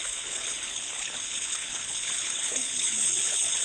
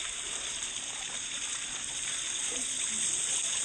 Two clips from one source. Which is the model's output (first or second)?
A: first